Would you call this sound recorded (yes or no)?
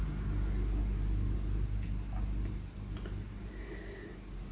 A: yes